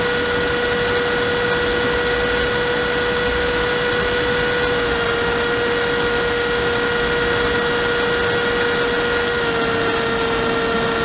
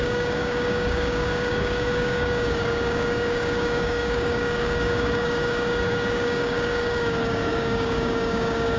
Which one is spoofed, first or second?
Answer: second